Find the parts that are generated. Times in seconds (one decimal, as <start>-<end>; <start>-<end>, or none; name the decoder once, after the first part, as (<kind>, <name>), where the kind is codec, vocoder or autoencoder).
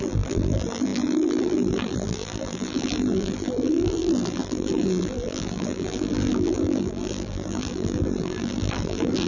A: 0.0-9.3 (vocoder, BigVGAN v2)